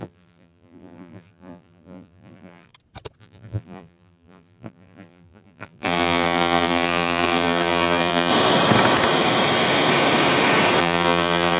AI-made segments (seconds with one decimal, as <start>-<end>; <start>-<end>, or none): 0.0-2.7; 3.2-8.3; 10.8-11.6